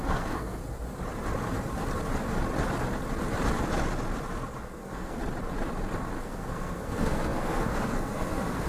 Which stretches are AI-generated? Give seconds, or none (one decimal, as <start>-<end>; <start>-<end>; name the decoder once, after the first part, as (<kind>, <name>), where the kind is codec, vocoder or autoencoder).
0.0-0.6 (codec, SNAC); 4.6-5.2; 6.2-8.7